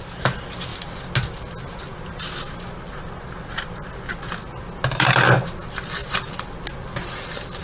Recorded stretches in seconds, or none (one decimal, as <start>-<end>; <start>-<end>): 0.0-7.6